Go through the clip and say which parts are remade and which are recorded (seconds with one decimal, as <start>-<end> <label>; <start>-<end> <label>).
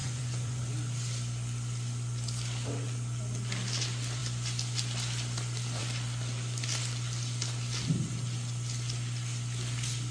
0.0-0.6 remade; 0.6-10.1 recorded